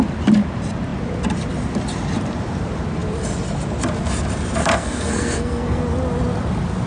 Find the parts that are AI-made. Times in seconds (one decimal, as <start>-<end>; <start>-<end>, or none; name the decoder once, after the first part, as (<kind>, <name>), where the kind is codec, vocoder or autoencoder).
4.6-5.8 (codec, SNAC)